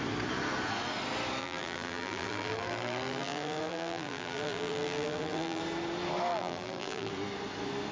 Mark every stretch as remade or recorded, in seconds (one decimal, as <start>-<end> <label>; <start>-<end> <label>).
0.0-1.4 recorded; 1.4-5.6 remade; 5.6-6.3 recorded; 6.3-7.1 remade; 7.1-7.9 recorded